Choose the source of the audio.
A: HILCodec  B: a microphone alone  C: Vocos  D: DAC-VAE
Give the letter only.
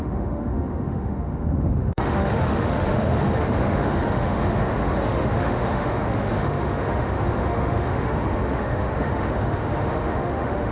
D